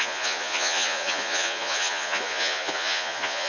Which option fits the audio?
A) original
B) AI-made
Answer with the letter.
B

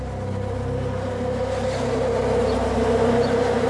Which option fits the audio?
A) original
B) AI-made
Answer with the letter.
A